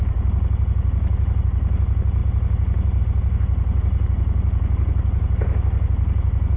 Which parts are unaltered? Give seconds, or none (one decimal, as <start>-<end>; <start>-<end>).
0.0-6.6